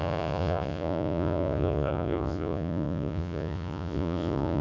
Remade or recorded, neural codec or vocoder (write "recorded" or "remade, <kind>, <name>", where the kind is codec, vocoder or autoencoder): remade, vocoder, Vocos